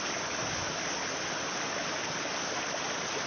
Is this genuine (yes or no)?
yes